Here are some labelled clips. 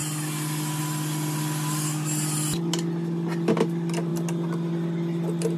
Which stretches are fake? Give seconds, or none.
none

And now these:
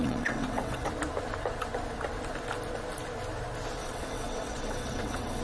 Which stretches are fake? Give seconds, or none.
0.0-0.9 (vocoder, WaveNeXt); 3.8-5.4